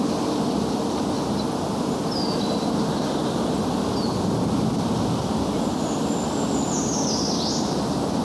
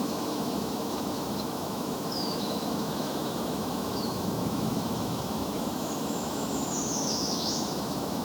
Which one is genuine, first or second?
first